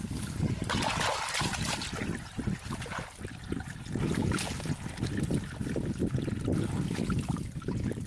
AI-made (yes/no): no